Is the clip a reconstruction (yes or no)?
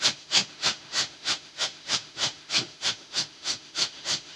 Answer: yes